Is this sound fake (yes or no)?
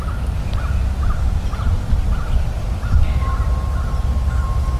no